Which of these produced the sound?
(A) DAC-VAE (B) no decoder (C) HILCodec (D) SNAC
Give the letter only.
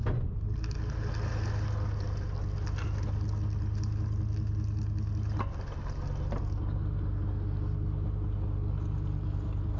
B